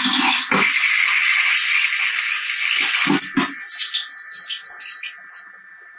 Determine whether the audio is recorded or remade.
recorded